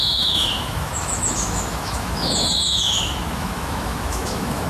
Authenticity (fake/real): fake